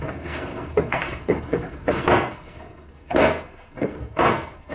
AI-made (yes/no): yes